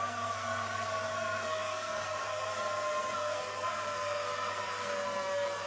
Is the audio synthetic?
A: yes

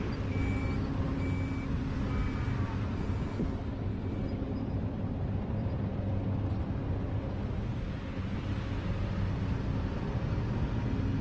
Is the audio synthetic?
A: no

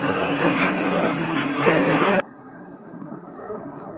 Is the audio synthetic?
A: yes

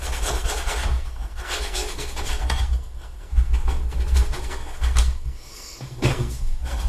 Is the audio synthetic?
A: yes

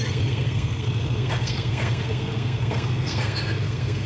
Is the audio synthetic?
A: yes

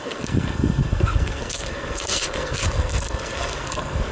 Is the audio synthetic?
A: yes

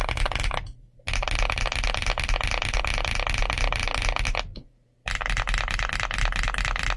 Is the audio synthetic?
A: no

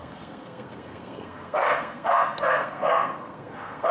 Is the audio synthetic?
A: yes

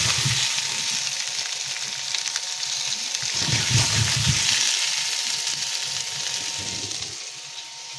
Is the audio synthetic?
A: no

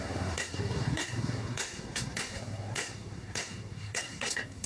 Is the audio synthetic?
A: yes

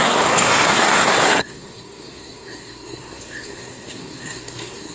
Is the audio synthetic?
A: yes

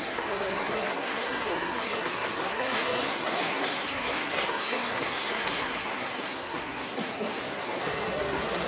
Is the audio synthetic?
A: yes